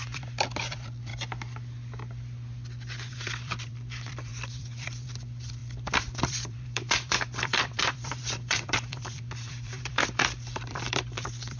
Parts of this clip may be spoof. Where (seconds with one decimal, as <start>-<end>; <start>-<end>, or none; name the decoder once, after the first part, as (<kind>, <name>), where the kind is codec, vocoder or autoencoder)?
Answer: 0.0-1.1 (vocoder, BigVGAN v2); 3.1-11.6